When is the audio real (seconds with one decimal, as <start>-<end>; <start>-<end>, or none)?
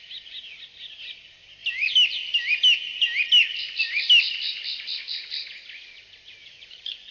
0.0-6.4